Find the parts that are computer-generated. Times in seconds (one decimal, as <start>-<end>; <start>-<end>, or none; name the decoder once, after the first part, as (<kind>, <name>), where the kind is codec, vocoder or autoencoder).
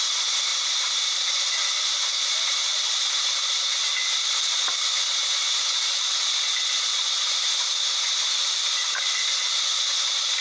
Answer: none